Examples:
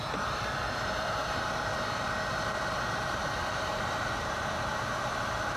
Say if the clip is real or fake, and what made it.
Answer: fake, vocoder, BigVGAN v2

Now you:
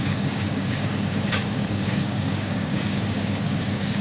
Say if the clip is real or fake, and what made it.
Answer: fake, codec, DAC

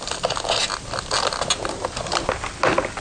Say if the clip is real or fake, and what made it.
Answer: real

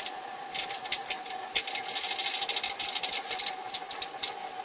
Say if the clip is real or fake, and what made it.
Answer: real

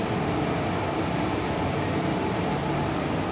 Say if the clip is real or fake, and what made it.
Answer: real